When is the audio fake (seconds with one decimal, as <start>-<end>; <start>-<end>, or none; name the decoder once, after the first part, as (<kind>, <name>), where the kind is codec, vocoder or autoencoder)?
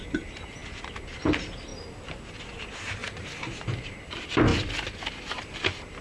0.6-1.2 (vocoder, BigVGAN v2); 1.7-2.6; 4.5-5.0